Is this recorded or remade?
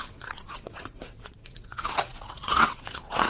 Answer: remade